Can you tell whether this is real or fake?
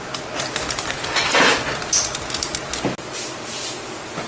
real